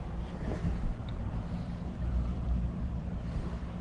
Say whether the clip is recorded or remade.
remade